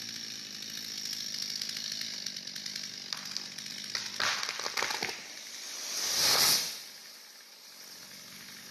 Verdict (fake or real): real